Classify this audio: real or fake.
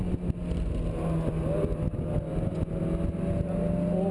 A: real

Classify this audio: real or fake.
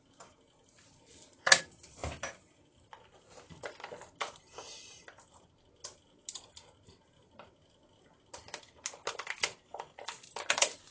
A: real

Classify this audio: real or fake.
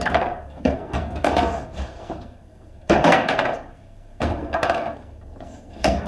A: fake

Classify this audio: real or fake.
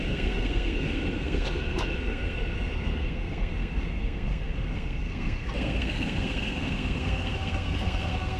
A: fake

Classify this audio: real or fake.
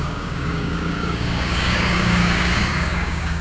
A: fake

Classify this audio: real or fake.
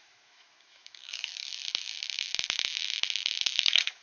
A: fake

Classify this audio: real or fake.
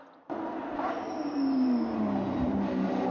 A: real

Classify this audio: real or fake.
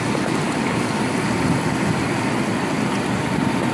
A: real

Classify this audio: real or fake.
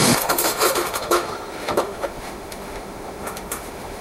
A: fake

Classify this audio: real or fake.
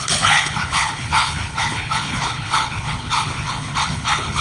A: fake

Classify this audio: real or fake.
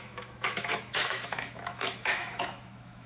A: fake